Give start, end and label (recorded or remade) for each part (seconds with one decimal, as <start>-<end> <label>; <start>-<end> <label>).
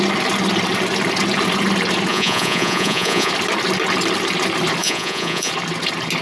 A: 0.0-2.1 recorded; 2.1-3.3 remade; 3.3-4.8 recorded; 4.8-5.5 remade; 5.5-6.2 recorded